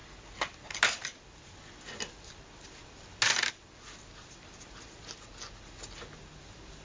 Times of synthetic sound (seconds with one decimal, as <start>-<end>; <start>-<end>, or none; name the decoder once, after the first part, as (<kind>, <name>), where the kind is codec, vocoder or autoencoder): none